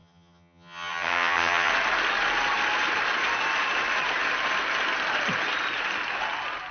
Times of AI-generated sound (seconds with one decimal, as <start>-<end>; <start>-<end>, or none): 0.0-1.7